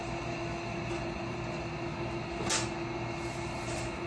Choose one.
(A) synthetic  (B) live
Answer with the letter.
B